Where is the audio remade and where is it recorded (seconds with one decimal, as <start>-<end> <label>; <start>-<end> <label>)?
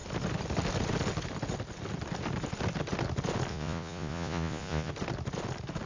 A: 0.0-3.5 recorded; 3.5-4.9 remade; 4.9-5.9 recorded